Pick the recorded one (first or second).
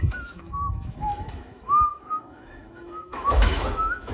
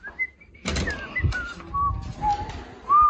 second